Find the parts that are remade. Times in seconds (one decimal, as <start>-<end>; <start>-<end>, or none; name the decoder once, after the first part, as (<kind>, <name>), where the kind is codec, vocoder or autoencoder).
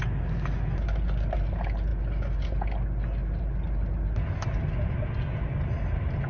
none